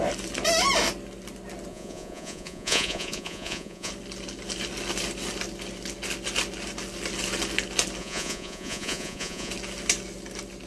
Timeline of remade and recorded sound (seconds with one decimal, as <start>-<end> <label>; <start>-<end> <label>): 0.0-1.7 recorded; 1.7-3.9 remade; 3.9-8.0 recorded; 8.0-9.5 remade; 9.5-10.7 recorded